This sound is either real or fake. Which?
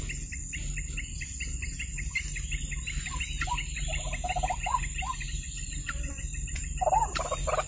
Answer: real